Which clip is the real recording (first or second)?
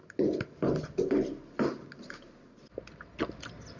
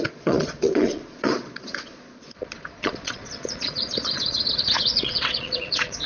first